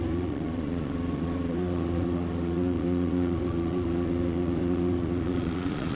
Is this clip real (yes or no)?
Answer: no